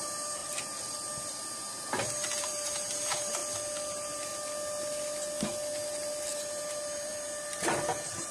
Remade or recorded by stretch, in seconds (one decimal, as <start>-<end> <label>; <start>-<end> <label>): 0.0-0.4 remade; 0.4-1.5 recorded; 1.5-3.4 remade; 3.4-3.9 recorded; 3.9-4.3 remade; 4.3-6.3 recorded; 6.3-8.3 remade